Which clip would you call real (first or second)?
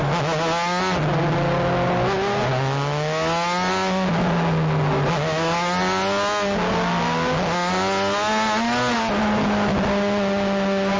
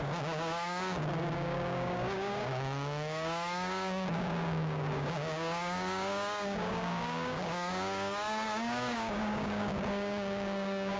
first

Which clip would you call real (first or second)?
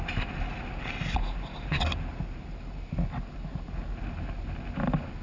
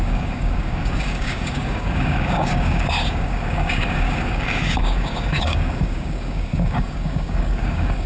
first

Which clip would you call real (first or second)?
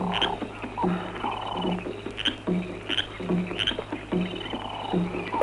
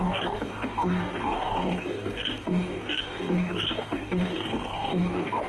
first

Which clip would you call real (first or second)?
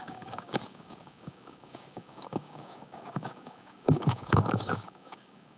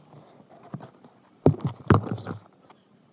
second